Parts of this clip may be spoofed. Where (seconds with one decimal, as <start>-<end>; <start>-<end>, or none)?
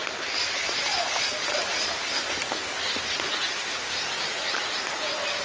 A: 0.9-1.6